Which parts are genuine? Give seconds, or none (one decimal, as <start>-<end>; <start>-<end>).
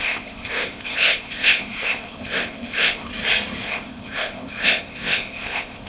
3.1-3.6